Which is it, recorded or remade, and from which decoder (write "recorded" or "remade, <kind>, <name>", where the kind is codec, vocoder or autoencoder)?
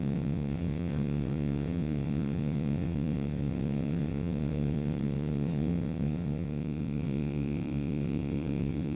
remade, vocoder, WaveNeXt